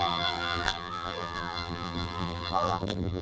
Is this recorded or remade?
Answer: remade